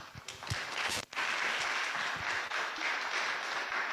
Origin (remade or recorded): recorded